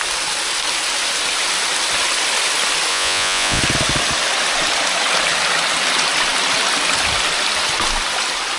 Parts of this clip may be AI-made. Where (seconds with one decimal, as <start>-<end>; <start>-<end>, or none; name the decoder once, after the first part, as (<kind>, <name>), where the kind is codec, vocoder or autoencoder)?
2.9-3.6 (vocoder, Vocos)